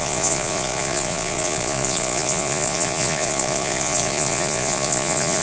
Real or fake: fake